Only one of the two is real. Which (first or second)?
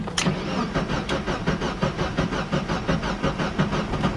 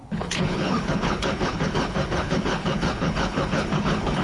first